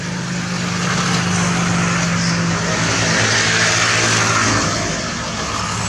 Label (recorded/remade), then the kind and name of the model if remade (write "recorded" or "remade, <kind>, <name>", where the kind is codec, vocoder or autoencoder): recorded